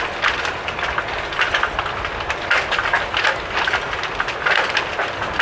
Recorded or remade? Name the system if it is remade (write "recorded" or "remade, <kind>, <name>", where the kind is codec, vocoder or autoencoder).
recorded